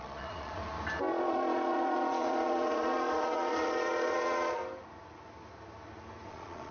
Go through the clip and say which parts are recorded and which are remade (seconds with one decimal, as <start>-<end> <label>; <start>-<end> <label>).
0.0-0.6 remade; 0.6-1.1 recorded; 1.1-4.6 remade; 4.6-6.3 recorded; 6.3-6.7 remade